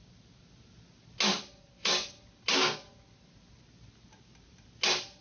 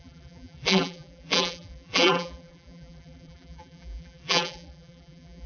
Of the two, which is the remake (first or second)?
second